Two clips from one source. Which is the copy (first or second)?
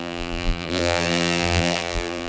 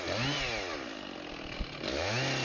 first